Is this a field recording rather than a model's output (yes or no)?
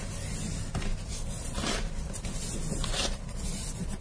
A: yes